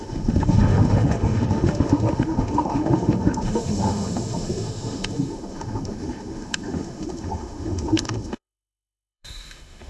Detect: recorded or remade remade